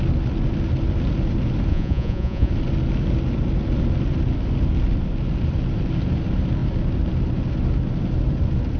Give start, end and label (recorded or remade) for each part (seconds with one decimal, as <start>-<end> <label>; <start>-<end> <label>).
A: 0.0-1.7 recorded; 1.7-2.5 remade; 2.5-8.8 recorded